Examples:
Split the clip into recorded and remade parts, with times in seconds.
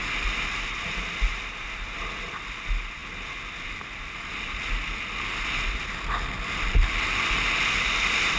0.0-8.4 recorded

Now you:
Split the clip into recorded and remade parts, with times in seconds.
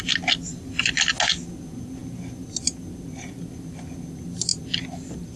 0.0-5.4 recorded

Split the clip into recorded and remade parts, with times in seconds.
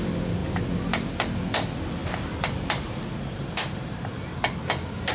0.0-5.1 recorded